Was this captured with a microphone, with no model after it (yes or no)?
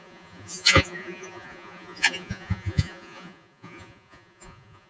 no